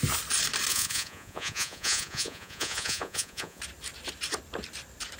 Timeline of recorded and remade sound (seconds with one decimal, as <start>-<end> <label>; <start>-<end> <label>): 0.0-0.7 recorded; 0.7-3.6 remade; 3.6-5.2 recorded